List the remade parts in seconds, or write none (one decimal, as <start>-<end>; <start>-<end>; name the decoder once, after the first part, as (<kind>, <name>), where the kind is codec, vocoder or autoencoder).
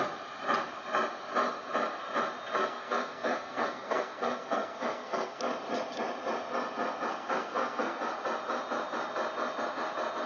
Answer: 2.6-5.4 (codec, SNAC); 7.1-8.0